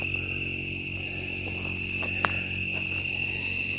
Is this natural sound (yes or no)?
yes